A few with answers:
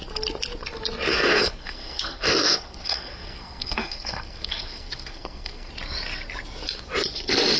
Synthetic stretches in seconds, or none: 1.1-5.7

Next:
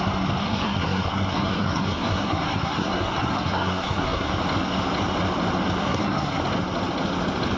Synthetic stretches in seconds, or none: 0.4-4.3; 5.8-6.4

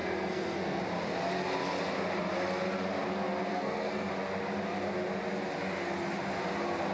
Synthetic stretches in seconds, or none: 0.0-0.8; 3.5-4.1

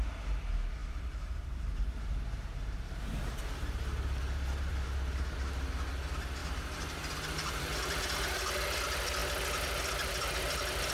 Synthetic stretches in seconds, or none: 0.8-5.7; 6.4-8.0

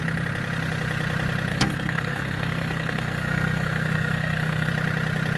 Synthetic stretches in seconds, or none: 1.5-4.7